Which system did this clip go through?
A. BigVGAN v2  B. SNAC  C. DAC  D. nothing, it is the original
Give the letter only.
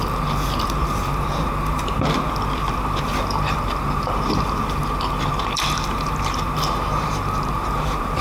A